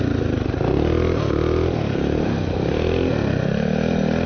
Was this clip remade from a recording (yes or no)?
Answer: no